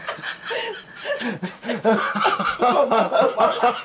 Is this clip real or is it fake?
real